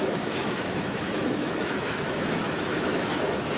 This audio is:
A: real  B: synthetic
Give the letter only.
B